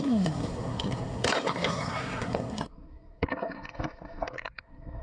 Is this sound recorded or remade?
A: remade